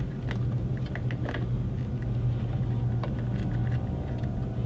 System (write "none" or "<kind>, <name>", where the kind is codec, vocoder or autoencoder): none